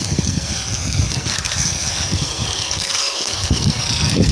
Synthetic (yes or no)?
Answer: yes